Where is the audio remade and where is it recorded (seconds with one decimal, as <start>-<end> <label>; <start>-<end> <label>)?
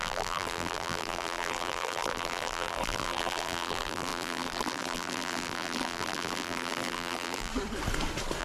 0.0-7.5 remade; 7.5-8.4 recorded